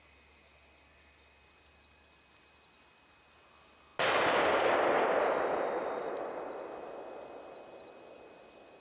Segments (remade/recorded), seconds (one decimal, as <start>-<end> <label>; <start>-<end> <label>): 0.0-8.8 recorded